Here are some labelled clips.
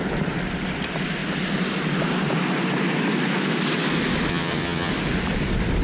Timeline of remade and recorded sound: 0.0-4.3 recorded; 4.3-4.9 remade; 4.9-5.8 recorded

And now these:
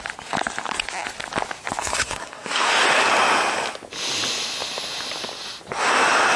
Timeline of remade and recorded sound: 0.0-1.8 recorded; 1.8-2.7 remade; 2.7-6.4 recorded

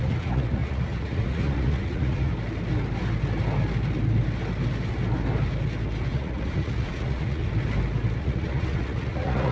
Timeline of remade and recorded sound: 0.0-2.3 remade; 2.3-6.1 recorded; 6.1-7.4 remade; 7.4-8.2 recorded; 8.2-9.5 remade

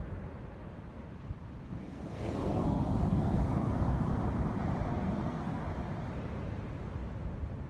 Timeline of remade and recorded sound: 0.0-1.6 recorded; 1.6-4.2 remade; 4.2-4.9 recorded; 4.9-5.6 remade; 5.6-7.7 recorded